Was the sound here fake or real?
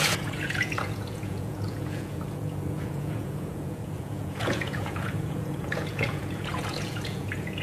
fake